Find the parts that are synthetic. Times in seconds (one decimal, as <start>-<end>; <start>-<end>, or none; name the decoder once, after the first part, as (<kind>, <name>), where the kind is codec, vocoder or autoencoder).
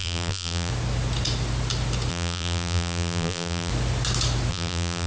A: 0.0-0.7 (vocoder, BigVGAN v2); 2.1-3.7; 4.5-5.1